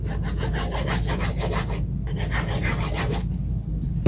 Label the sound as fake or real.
real